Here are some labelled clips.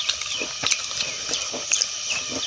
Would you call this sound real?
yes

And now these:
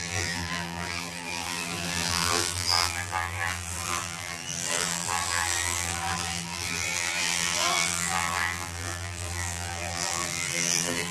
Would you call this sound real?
no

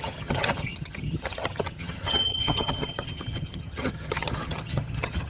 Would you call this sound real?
no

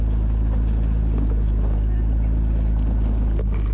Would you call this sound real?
yes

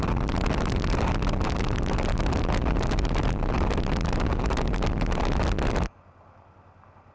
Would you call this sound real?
yes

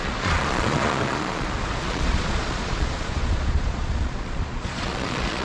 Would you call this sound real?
no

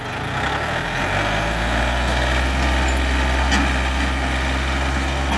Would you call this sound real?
yes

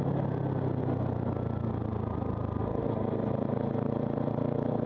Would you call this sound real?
yes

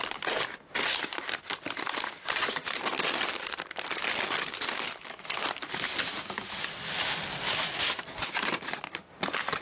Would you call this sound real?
yes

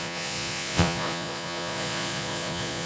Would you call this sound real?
no